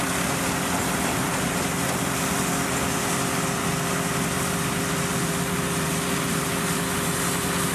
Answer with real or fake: real